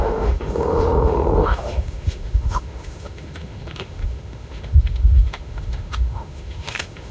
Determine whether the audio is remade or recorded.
remade